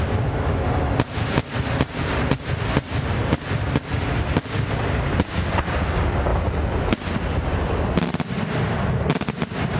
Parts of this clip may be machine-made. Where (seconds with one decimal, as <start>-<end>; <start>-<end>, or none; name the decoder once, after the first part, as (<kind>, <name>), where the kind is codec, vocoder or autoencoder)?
none